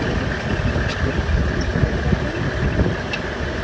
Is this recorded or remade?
recorded